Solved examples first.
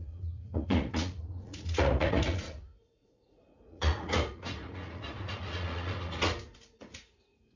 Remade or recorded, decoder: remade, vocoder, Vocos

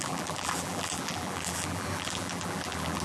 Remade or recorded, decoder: remade, vocoder, BigVGAN v2